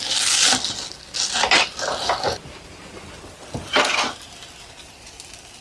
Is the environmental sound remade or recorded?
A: recorded